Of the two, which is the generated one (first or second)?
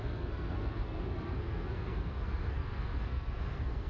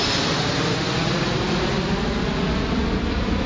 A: first